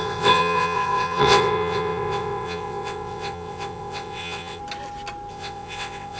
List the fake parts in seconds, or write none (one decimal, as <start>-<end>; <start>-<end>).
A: 0.0-4.6; 5.3-6.2